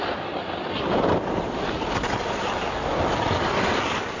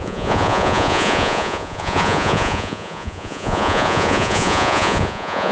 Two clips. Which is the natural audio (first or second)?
first